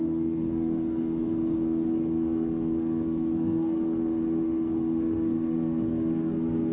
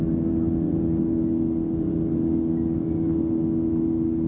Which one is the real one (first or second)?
second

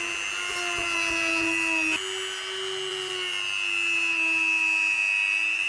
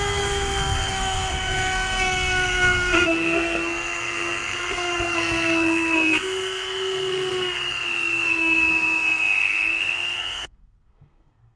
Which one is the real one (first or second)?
first